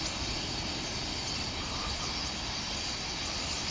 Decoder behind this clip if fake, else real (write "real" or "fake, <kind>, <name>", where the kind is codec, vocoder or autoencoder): real